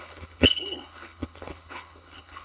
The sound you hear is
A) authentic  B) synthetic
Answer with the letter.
B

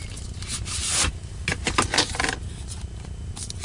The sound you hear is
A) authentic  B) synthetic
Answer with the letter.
A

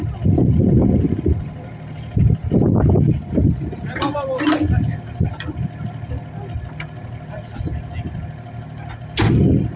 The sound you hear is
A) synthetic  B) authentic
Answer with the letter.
B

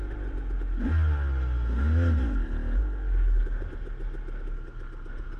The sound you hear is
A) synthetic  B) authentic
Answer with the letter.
B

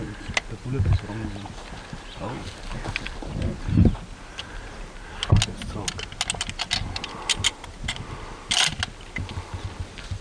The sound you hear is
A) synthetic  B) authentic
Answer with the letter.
B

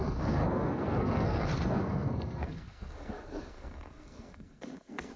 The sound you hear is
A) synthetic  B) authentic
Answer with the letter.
A